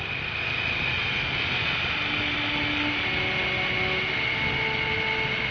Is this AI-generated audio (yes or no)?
no